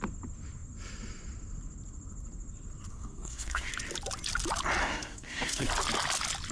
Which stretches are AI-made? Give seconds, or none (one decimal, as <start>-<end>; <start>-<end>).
2.9-3.7; 4.8-5.7